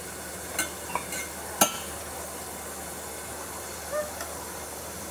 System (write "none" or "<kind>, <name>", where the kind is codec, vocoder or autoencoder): none